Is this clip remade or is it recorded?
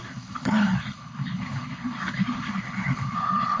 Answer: remade